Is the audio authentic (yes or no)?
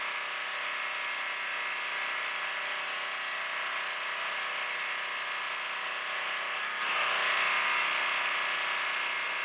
yes